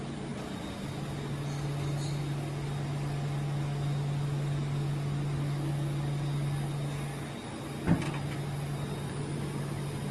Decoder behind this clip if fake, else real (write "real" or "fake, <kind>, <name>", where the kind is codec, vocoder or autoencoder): real